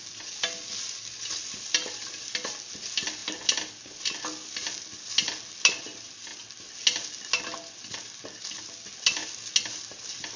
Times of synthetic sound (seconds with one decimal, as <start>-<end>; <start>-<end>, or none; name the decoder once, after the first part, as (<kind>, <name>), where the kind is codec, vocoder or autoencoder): none